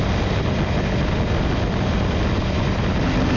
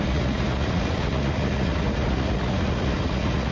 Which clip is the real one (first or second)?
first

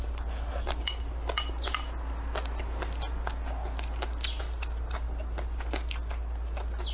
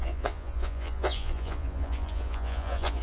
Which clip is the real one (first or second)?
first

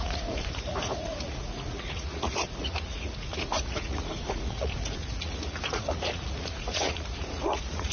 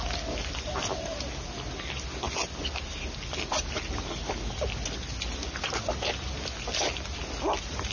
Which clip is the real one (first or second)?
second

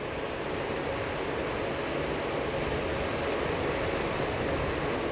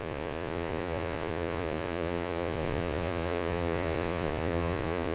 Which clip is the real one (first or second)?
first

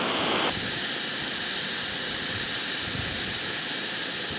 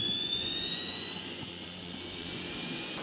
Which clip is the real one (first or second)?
first